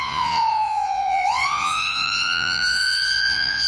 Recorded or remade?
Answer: remade